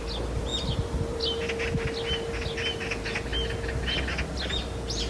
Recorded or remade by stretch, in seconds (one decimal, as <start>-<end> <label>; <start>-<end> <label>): 0.0-5.1 recorded